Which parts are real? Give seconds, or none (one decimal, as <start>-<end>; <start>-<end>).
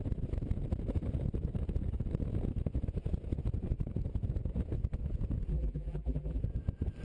0.0-5.5; 6.4-7.0